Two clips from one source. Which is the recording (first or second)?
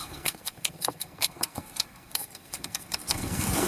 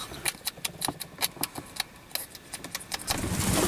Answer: second